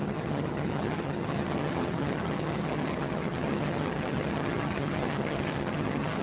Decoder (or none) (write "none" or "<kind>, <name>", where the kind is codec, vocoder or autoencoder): vocoder, HiFi-GAN